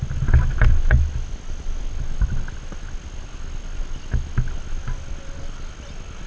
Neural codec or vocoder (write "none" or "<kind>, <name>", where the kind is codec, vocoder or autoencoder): none